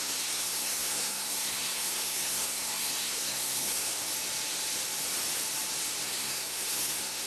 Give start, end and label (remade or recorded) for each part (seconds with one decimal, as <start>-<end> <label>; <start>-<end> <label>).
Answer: 0.0-4.1 remade; 4.1-6.0 recorded; 6.0-7.3 remade